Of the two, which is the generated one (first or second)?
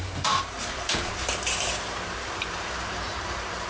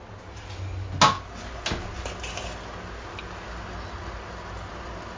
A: first